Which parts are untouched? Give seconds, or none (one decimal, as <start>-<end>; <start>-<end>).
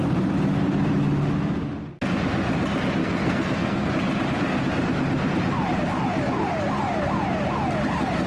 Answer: 0.0-3.0; 3.9-8.3